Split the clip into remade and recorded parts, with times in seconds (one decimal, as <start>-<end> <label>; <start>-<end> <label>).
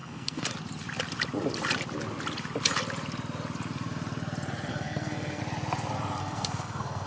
0.0-0.5 remade; 0.5-4.7 recorded; 4.7-5.4 remade; 5.4-6.2 recorded; 6.2-7.1 remade